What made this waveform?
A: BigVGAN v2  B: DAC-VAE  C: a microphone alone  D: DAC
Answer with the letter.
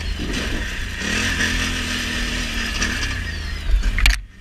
C